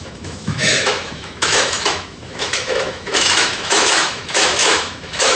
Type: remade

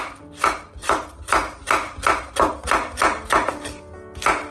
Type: recorded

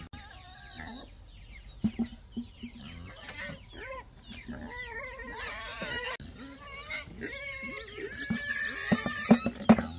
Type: recorded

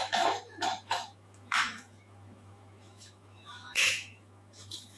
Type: remade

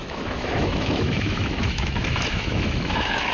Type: remade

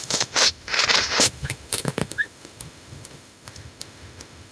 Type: remade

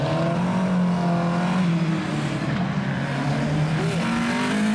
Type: recorded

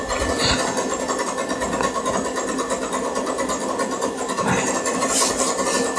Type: recorded